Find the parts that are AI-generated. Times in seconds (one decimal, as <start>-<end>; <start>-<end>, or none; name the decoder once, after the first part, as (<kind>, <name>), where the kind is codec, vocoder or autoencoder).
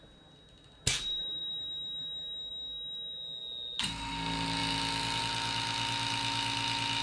none